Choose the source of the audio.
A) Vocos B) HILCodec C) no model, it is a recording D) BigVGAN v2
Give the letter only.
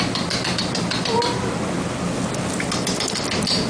C